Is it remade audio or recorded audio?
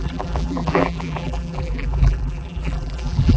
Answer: remade